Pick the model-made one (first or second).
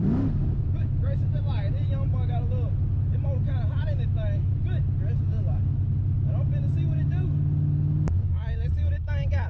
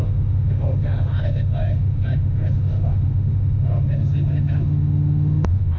second